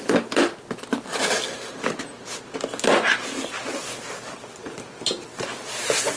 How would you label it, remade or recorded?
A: recorded